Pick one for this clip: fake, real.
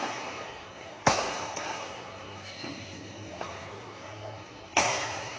fake